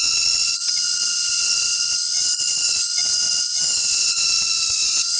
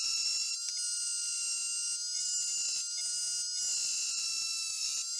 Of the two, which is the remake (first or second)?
first